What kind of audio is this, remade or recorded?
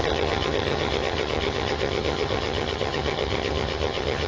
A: remade